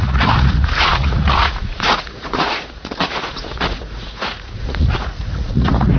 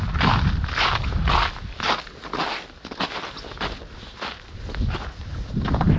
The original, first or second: second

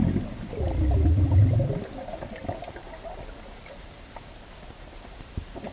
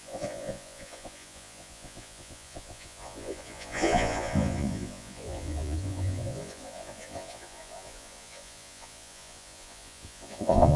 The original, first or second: first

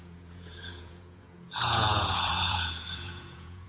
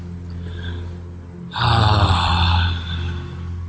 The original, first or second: second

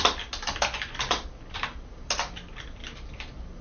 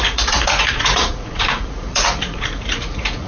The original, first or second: first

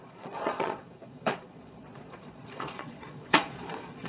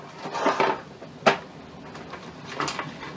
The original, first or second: second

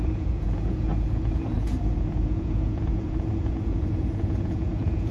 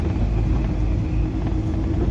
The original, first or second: second